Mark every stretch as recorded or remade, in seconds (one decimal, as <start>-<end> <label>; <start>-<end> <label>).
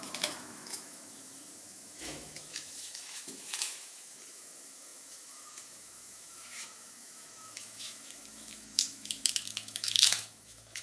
0.0-10.8 remade